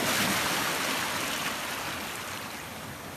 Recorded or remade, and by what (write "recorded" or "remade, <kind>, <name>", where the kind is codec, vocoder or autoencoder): recorded